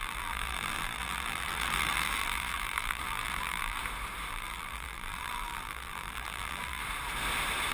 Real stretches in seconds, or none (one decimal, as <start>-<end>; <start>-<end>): 3.8-4.3; 6.8-7.7